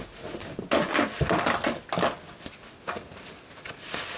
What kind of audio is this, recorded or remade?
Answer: recorded